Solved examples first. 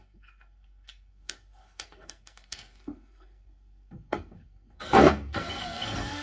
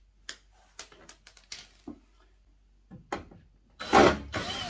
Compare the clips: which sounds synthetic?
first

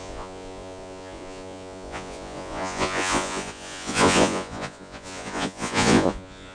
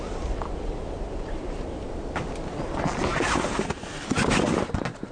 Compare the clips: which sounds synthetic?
first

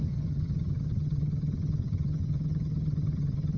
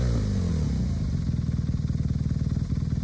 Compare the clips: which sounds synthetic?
first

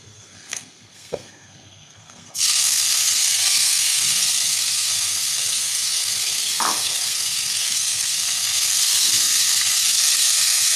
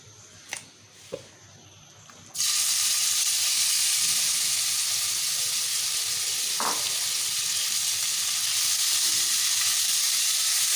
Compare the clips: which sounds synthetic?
first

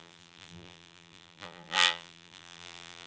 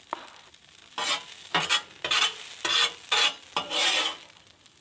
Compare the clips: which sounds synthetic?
first